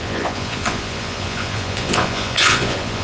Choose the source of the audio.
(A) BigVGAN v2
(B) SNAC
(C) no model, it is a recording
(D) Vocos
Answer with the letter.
D